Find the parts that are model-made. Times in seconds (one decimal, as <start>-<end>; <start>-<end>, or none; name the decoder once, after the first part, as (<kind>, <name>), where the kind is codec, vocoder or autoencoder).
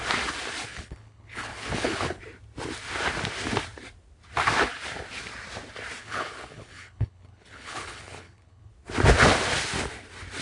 0.7-2.2 (codec, HILCodec); 6.0-8.7